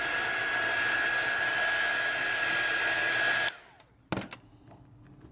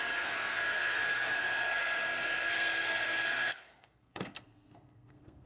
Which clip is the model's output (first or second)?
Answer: second